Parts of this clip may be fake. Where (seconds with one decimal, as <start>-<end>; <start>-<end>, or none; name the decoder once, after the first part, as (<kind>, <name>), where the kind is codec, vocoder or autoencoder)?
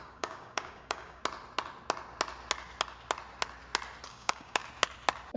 0.0-1.2 (codec, DAC); 4.1-4.6